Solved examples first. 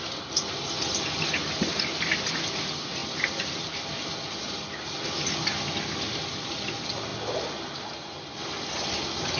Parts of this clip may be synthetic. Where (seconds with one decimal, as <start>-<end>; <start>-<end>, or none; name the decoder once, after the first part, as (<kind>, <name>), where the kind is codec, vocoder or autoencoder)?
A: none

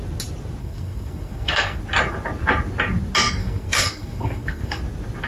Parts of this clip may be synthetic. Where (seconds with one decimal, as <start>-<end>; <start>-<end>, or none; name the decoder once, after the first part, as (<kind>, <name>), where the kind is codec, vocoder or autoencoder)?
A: 0.6-1.8 (codec, SNAC); 3.4-4.8

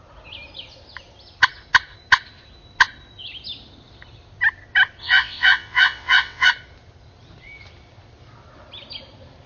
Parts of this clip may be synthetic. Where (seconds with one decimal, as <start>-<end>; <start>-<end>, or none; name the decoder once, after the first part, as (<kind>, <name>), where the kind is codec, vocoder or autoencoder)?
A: 5.0-6.5 (vocoder, WaveNeXt)

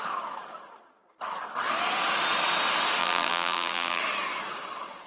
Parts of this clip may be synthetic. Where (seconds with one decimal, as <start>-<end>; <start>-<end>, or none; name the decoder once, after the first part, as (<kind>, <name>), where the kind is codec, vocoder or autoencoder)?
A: 3.0-4.0 (vocoder, BigVGAN v2)

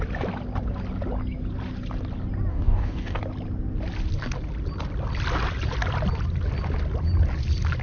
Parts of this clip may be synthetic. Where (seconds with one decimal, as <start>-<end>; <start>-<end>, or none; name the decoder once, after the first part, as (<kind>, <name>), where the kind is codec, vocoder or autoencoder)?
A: 2.5-3.2 (codec, DAC)